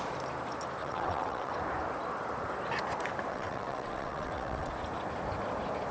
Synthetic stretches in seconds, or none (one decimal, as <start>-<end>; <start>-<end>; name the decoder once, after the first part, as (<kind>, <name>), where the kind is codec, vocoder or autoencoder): 0.8-1.5 (vocoder, WaveNeXt); 3.3-4.7